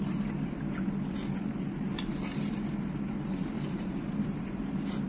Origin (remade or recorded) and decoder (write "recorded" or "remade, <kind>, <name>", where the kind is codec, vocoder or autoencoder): recorded